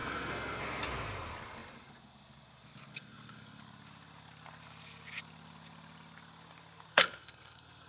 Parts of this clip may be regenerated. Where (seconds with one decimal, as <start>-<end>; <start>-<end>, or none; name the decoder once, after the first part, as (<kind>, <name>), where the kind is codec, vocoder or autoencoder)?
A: 0.0-0.6 (codec, SNAC); 2.9-3.6; 6.9-7.9